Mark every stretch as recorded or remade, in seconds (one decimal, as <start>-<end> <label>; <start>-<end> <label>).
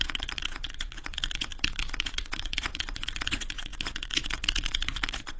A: 0.0-5.4 remade